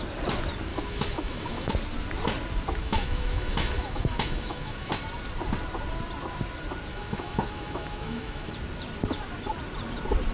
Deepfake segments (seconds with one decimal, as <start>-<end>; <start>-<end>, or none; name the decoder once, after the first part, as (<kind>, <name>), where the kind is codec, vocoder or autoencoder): 0.7-1.7 (autoencoder, DAC-VAE); 2.8-4.9; 6.9-8.5